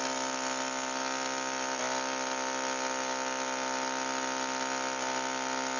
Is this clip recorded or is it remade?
recorded